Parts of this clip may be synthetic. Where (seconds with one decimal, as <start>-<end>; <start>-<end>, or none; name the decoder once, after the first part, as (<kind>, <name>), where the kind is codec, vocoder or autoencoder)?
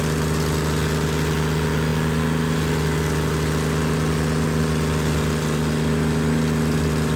none